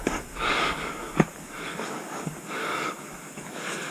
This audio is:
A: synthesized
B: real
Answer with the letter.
A